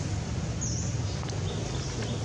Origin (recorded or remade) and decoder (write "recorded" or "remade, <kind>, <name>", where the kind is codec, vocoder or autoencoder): recorded